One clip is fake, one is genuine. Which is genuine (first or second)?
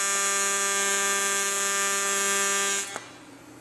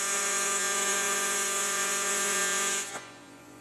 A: first